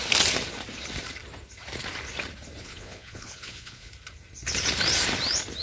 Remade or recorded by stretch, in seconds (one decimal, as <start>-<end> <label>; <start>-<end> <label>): 0.0-2.6 recorded; 2.6-3.9 remade; 3.9-5.6 recorded